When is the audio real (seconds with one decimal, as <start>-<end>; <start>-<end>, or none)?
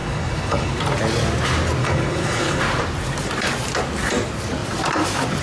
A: 0.8-1.8; 2.6-5.4